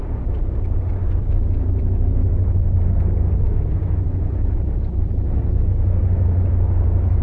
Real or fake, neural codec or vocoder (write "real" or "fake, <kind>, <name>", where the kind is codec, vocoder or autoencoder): real